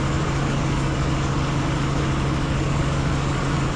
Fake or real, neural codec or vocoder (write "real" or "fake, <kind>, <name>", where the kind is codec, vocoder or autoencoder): fake, codec, DAC